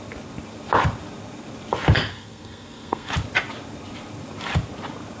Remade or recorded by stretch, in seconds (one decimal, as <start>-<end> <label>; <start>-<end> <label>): 0.0-2.1 recorded; 2.1-3.1 remade; 3.1-5.2 recorded